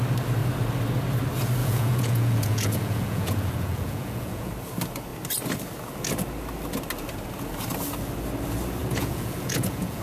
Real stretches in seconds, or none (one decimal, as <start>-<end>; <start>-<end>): 0.0-1.6; 4.5-8.8